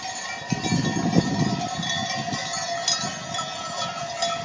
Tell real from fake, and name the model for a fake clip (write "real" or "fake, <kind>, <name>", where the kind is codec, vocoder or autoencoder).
real